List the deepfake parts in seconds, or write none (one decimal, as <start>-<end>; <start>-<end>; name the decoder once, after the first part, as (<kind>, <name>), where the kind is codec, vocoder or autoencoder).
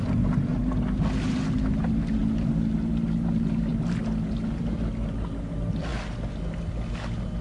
none